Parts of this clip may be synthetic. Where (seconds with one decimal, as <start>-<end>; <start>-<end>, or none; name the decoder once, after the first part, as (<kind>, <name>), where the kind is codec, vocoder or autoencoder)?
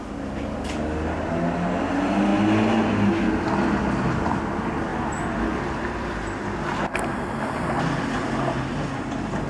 none